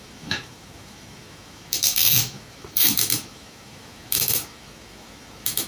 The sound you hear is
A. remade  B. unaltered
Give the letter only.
A